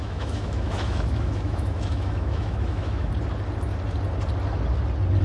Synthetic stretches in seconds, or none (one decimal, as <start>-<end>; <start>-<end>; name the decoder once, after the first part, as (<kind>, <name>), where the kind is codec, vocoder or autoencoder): 0.0-3.1 (autoencoder, DAC-VAE)